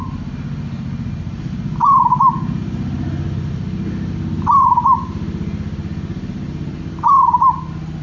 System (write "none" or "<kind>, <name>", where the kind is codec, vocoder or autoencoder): none